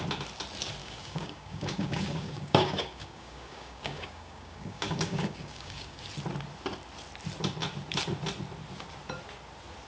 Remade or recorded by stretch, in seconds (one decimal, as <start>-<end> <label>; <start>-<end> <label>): 0.0-0.8 recorded; 0.8-6.0 remade; 6.0-9.9 recorded